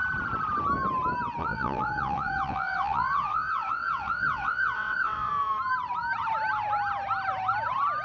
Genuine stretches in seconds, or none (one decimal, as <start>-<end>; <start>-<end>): 0.0-1.4; 5.3-8.0